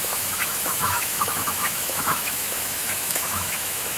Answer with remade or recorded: remade